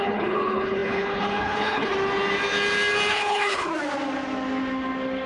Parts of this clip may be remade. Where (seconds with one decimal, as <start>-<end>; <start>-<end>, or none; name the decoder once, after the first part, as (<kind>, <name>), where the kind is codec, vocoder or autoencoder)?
0.0-1.9 (codec, HILCodec); 3.1-3.7